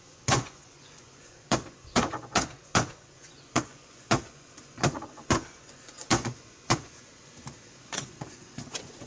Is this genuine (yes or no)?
no